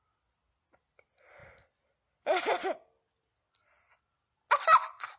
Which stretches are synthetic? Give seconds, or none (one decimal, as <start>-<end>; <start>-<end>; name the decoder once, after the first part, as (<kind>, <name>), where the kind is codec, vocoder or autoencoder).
none